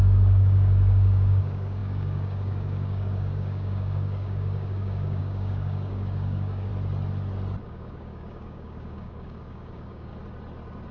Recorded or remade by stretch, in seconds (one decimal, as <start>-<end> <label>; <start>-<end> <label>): 0.0-6.7 remade; 6.7-7.6 recorded; 7.6-10.1 remade; 10.1-10.9 recorded